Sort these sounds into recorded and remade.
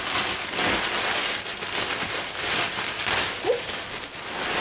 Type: recorded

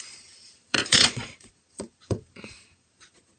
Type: remade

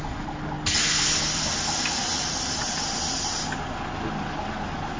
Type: recorded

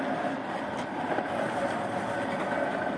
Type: recorded